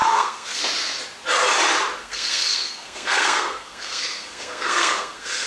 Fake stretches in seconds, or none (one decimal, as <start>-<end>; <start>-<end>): 0.0-0.6; 2.0-5.5